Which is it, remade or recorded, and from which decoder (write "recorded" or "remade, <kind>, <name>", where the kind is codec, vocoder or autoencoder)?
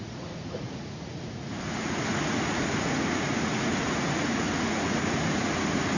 remade, vocoder, Vocos